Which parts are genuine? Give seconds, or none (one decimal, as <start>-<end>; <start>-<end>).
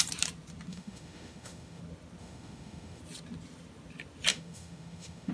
0.0-0.7; 1.8-2.2; 3.0-4.3